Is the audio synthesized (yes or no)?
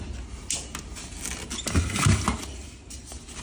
no